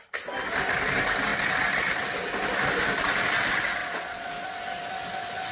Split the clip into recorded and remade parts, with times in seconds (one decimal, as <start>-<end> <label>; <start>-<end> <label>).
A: 0.0-3.8 recorded; 3.8-4.3 remade; 4.3-5.5 recorded